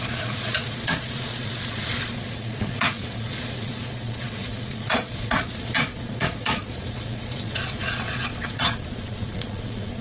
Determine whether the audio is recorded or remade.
remade